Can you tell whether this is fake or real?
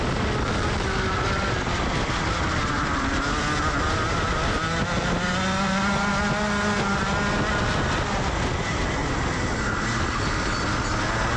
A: real